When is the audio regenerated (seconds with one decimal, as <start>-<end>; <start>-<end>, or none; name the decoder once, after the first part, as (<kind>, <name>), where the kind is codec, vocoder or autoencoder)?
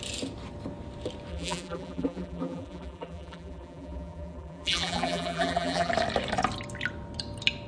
1.3-5.9 (vocoder, BigVGAN v2)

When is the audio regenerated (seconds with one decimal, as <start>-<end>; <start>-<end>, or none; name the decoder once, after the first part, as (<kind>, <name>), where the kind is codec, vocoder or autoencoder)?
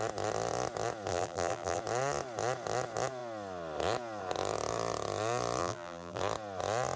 1.1-1.8 (vocoder, BigVGAN v2); 5.6-6.2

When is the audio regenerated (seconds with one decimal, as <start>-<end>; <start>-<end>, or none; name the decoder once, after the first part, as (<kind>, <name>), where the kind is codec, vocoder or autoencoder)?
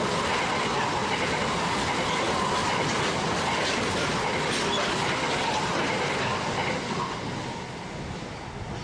2.6-3.9 (vocoder, BigVGAN v2)